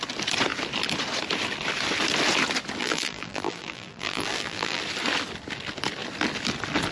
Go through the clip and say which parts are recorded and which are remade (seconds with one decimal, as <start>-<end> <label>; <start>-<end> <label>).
0.0-2.8 recorded; 2.8-4.8 remade; 4.8-6.9 recorded